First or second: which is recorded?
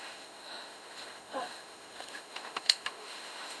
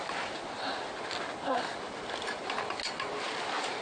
second